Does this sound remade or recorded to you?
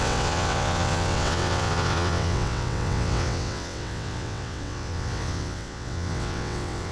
remade